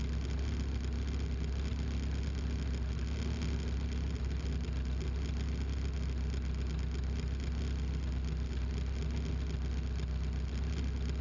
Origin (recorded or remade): recorded